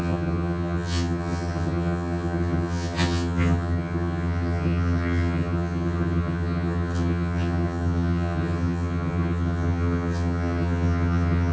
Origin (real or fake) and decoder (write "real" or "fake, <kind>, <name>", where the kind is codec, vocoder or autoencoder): fake, vocoder, HiFi-GAN